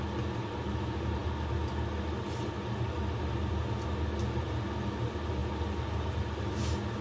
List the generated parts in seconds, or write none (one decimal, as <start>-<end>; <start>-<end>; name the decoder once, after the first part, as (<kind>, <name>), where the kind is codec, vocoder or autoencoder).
none